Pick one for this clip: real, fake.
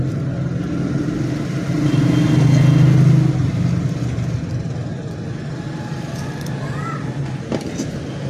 real